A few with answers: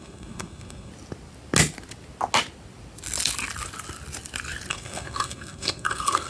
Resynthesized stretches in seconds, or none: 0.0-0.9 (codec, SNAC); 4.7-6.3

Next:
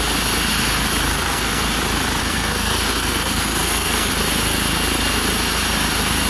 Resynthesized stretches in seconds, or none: 1.1-1.6 (codec, SNAC); 2.2-4.1

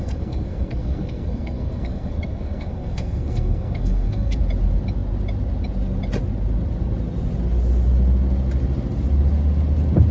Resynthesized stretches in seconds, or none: 0.0-4.4 (codec, SNAC)

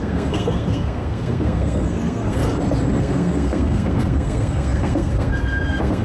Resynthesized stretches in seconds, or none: 0.0-2.4 (codec, SNAC); 3.0-6.0

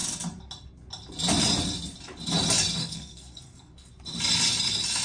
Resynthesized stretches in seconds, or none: 2.8-3.9 (codec, SNAC)

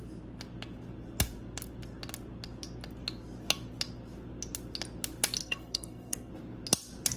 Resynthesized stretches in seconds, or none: 5.4-6.3 (codec, SNAC)